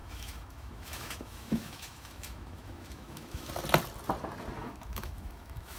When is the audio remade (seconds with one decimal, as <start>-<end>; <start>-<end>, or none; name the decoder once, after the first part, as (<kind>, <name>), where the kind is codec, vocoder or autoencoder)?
0.0-3.5 (autoencoder, DAC-VAE); 4.6-5.8